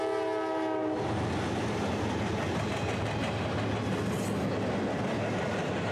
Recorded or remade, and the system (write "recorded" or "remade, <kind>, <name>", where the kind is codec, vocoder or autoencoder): recorded